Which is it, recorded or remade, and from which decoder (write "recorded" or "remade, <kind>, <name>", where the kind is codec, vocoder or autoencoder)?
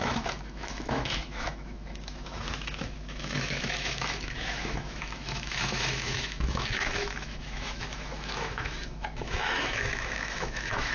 remade, autoencoder, DAC-VAE